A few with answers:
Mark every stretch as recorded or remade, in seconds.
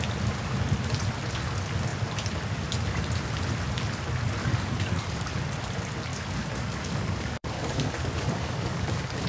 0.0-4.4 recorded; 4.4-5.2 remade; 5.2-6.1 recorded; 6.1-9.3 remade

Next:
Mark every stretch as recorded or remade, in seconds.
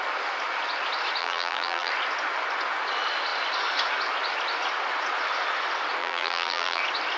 0.0-1.2 recorded; 1.2-1.9 remade; 1.9-6.0 recorded; 6.0-6.8 remade; 6.8-7.2 recorded